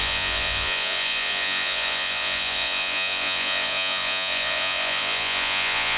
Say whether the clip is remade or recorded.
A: remade